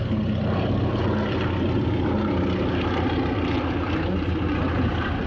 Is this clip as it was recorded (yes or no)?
yes